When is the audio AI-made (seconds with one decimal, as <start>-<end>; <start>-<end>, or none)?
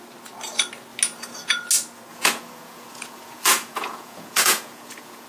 2.1-5.3